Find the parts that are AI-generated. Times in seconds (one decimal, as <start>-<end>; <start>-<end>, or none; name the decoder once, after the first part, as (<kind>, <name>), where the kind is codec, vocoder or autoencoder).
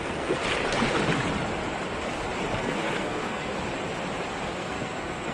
0.0-0.4 (codec, SNAC); 2.6-3.5; 4.5-5.3